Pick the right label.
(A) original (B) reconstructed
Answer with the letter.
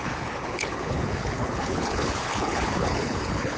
B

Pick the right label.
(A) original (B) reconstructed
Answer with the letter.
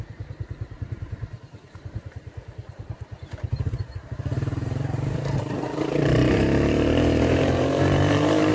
B